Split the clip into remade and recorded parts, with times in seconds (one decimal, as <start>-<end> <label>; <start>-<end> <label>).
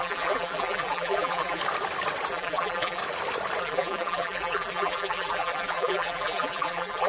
0.0-1.6 remade; 1.6-2.3 recorded; 2.3-3.0 remade; 3.0-3.6 recorded; 3.6-7.1 remade